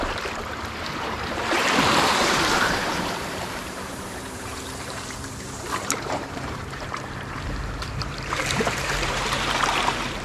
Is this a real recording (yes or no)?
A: no